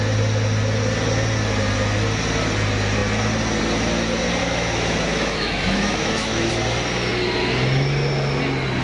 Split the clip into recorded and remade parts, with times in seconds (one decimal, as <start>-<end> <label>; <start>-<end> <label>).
0.0-4.4 recorded; 4.4-6.5 remade; 6.5-8.8 recorded